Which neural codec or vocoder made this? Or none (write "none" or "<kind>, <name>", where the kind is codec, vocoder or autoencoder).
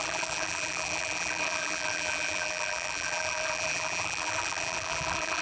vocoder, BigVGAN v2